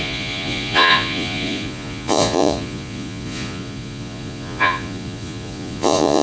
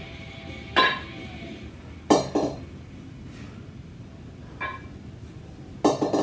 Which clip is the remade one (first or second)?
first